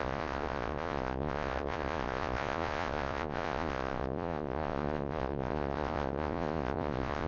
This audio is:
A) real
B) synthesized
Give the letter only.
B